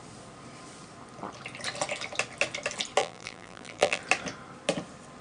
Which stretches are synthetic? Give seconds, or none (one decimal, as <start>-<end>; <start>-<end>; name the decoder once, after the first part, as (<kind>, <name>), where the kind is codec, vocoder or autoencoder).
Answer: 3.0-4.0 (vocoder, BigVGAN v2)